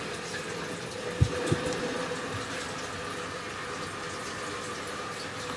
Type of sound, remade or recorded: recorded